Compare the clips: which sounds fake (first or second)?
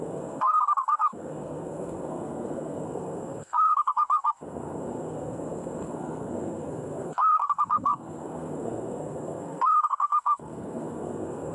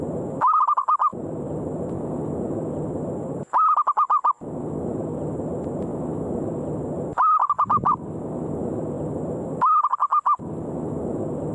first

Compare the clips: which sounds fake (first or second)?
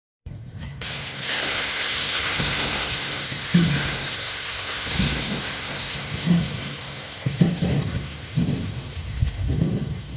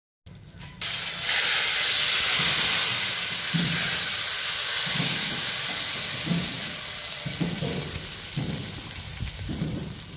first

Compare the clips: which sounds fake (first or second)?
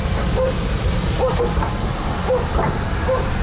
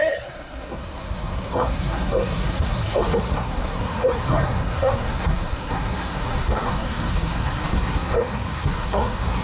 second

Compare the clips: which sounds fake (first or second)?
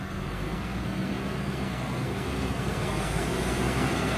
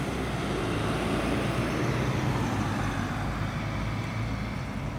first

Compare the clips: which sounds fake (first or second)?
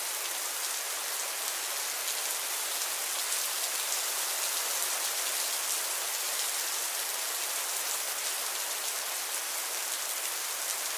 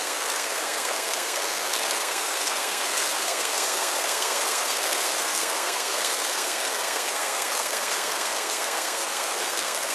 second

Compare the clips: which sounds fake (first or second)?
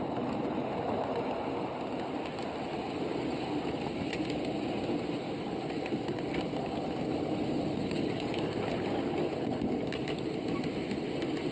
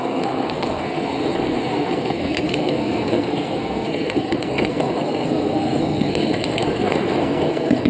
second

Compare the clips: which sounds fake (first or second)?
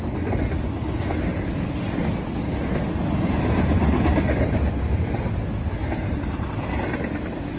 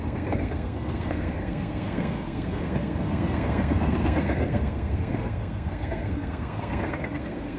second